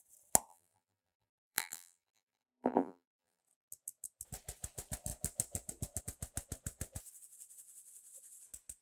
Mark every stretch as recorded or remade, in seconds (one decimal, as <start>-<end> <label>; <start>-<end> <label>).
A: 0.0-0.5 recorded; 0.5-3.4 remade; 3.4-8.8 recorded